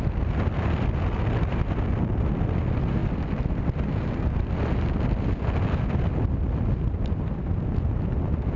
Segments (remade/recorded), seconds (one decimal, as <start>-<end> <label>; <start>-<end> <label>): 0.0-8.6 recorded